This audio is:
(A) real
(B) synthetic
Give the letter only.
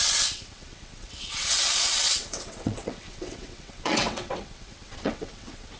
B